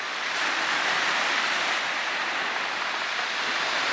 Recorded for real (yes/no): no